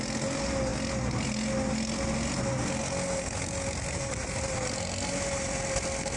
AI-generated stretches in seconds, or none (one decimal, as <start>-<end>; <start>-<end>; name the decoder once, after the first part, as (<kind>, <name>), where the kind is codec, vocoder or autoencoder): none